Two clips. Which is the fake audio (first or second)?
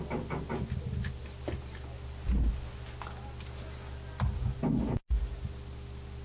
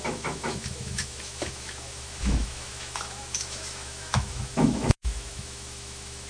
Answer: second